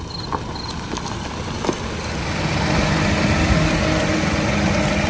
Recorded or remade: recorded